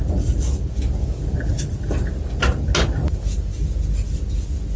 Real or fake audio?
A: real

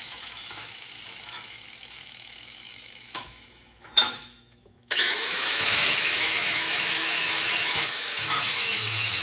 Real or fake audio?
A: fake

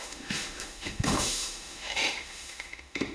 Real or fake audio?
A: fake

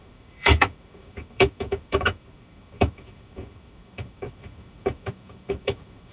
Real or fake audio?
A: fake